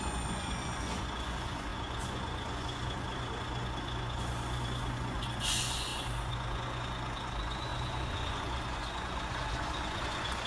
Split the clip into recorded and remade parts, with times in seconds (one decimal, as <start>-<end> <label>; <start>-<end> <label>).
0.0-10.5 remade